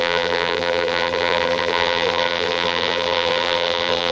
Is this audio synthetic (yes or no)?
yes